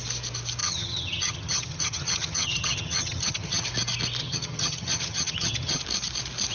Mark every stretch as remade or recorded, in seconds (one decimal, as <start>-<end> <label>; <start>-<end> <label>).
0.0-0.6 recorded; 0.6-3.7 remade; 3.7-4.2 recorded; 4.2-5.8 remade; 5.8-6.5 recorded